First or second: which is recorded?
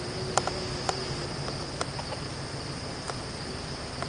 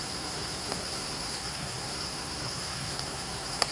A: first